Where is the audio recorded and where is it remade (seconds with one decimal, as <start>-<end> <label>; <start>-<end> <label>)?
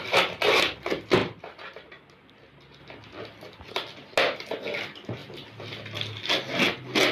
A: 0.0-7.1 recorded